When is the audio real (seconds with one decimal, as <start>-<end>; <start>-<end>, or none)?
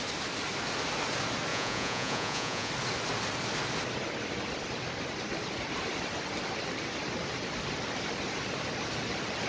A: 0.0-1.5; 2.7-9.5